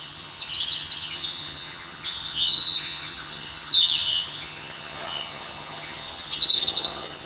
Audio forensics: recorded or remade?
remade